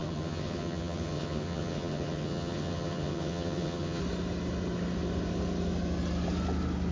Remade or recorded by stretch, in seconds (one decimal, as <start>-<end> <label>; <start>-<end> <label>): 0.0-4.0 remade; 4.0-6.9 recorded